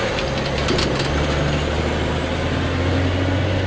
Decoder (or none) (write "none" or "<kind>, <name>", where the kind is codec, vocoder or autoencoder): none